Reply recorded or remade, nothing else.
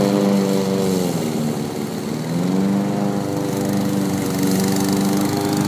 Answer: recorded